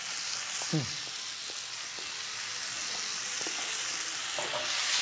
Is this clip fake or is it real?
real